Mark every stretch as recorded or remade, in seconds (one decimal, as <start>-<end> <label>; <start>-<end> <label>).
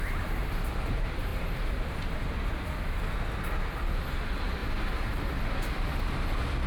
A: 0.0-1.3 recorded; 1.3-2.5 remade; 2.5-4.6 recorded; 4.6-5.6 remade; 5.6-6.7 recorded